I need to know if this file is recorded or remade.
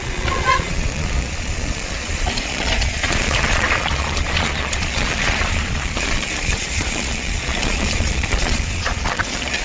remade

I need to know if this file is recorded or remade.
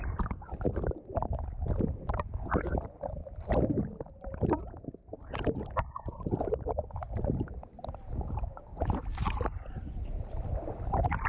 recorded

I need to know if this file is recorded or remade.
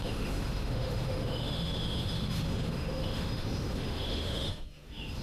remade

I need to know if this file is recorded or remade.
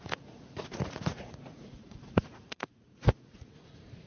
remade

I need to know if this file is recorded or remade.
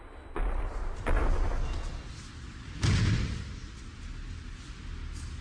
recorded